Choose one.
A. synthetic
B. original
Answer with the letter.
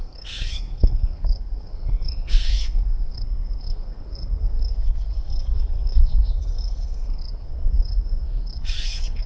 A